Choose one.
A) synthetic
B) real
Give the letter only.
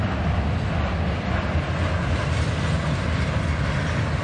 B